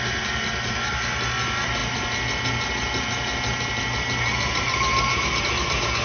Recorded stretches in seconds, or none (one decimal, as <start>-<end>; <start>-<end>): 0.0-6.0